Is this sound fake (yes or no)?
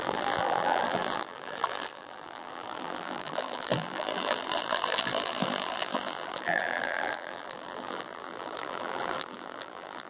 yes